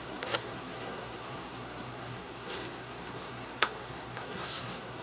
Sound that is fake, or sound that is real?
fake